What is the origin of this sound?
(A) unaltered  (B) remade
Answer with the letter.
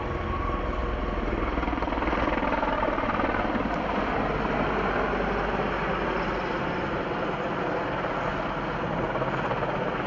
A